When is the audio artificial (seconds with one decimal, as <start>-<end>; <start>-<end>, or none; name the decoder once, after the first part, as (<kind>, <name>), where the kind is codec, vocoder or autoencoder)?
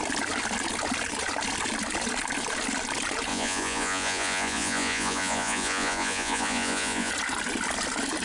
3.3-7.1 (vocoder, Vocos)